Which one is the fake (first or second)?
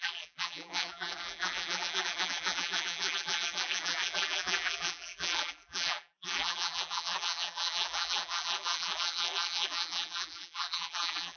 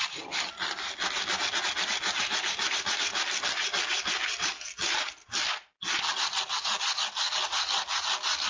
first